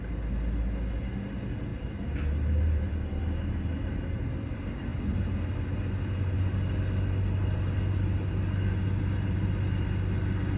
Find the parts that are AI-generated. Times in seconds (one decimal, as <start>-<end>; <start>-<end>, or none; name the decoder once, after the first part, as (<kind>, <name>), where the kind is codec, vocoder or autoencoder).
1.7-3.2 (vocoder, BigVGAN v2)